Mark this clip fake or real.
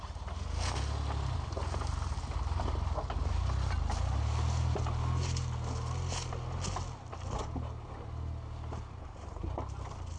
real